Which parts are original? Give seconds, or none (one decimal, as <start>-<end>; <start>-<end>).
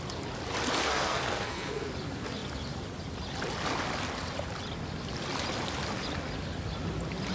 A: 0.0-0.8; 1.9-7.3